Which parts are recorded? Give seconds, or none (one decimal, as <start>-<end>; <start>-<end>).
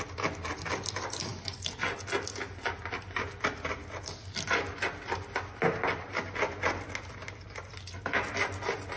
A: 0.0-9.0